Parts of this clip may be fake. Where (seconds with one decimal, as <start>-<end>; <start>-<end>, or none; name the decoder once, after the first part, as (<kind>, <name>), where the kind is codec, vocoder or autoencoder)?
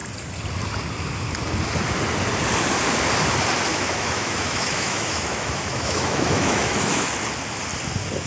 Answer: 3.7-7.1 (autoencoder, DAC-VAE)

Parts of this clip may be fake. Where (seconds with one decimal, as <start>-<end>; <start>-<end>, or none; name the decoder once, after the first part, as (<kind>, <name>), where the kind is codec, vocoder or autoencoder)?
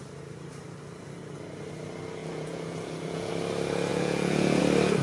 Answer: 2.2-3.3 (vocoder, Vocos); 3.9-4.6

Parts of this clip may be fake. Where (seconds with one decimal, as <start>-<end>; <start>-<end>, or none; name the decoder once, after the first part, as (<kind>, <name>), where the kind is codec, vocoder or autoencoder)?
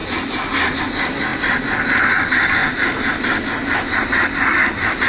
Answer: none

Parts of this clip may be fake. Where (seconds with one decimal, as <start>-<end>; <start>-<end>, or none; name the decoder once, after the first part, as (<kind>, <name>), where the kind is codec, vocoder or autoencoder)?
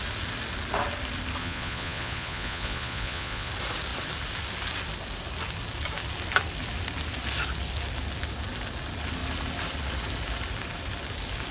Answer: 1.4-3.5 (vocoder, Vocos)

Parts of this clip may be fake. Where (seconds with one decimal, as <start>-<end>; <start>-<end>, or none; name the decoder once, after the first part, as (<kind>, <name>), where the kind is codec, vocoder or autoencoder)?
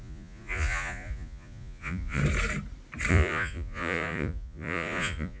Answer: 0.0-2.2 (vocoder, Vocos); 3.1-5.4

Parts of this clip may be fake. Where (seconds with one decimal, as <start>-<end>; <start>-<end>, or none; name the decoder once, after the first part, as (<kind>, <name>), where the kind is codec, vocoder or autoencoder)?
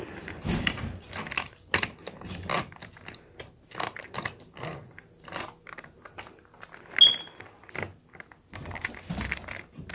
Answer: none